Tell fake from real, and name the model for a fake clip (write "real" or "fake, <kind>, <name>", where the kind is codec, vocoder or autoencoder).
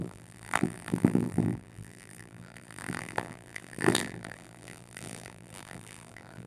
fake, vocoder, BigVGAN v2